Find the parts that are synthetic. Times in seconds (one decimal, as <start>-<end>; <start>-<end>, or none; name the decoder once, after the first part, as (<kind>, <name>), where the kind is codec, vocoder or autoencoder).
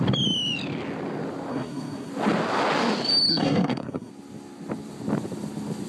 1.5-2.1 (codec, SNAC); 3.3-4.1